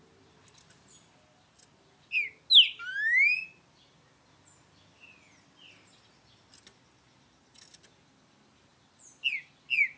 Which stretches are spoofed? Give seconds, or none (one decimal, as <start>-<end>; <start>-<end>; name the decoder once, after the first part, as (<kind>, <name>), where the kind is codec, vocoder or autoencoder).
none